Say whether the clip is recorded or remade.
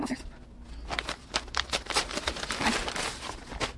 recorded